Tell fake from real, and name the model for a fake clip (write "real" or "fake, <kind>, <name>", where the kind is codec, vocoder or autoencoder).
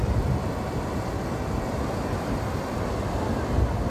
real